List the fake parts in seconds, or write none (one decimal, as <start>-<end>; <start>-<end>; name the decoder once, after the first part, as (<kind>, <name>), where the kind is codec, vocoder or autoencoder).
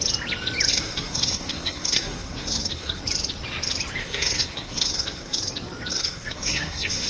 0.7-3.0 (codec, SNAC); 4.0-5.4; 5.9-7.1